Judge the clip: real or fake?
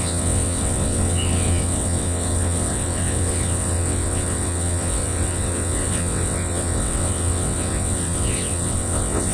fake